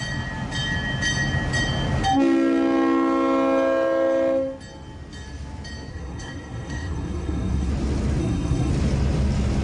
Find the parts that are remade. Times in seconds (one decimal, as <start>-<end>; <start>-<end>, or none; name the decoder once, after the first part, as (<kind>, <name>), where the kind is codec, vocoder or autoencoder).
5.9-7.7 (codec, SNAC); 8.2-8.7